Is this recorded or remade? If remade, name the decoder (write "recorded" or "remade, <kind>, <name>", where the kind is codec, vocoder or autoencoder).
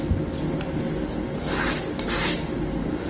recorded